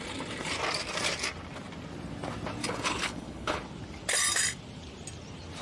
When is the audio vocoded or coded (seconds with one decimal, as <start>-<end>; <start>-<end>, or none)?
2.6-3.6

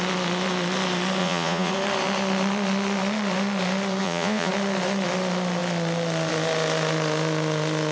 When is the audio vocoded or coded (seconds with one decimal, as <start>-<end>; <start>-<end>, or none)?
1.2-1.7; 4.0-4.5